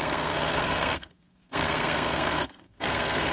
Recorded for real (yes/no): no